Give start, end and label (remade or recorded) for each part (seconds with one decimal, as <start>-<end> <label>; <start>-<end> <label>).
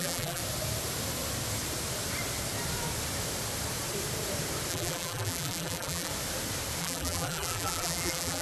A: 0.0-0.4 remade; 0.4-4.7 recorded; 4.7-6.1 remade; 6.1-6.8 recorded; 6.8-8.4 remade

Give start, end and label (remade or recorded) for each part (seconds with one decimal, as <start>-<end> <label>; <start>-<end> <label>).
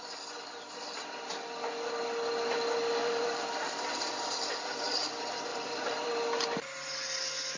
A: 0.0-3.0 recorded; 3.0-3.9 remade; 3.9-5.5 recorded; 5.5-6.1 remade; 6.1-7.6 recorded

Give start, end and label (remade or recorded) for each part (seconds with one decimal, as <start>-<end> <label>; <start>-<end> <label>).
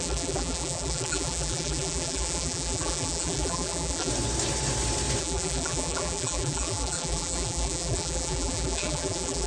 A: 0.0-4.1 remade; 4.1-5.2 recorded; 5.2-9.5 remade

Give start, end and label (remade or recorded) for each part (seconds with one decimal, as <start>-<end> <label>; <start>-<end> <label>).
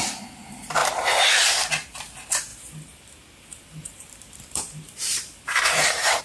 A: 0.0-0.8 recorded; 0.8-1.3 remade; 1.3-2.5 recorded; 2.5-6.2 remade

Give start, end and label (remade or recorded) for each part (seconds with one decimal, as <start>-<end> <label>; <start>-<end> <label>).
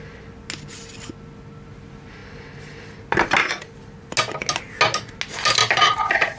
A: 0.0-6.4 recorded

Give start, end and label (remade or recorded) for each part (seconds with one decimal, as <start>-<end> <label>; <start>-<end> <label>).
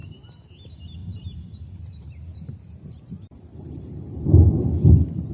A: 0.0-1.0 recorded; 1.0-4.2 remade; 4.2-5.3 recorded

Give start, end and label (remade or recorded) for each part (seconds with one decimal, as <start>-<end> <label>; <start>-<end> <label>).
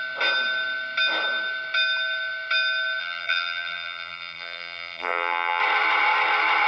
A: 0.0-3.0 recorded; 3.0-5.6 remade; 5.6-6.7 recorded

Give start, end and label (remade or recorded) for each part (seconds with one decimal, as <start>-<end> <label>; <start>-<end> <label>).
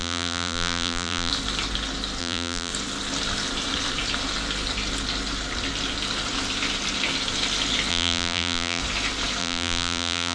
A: 0.0-1.3 remade; 1.3-2.2 recorded; 2.2-2.7 remade; 2.7-7.9 recorded; 7.9-8.8 remade; 8.8-9.4 recorded; 9.4-10.3 remade